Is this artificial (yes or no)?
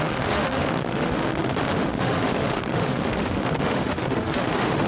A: yes